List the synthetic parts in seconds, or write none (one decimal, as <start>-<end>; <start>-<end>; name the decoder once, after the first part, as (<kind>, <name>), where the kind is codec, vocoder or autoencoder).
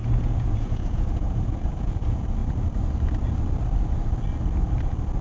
0.0-2.4 (vocoder, Vocos)